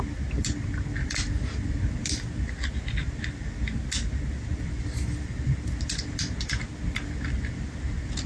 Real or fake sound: real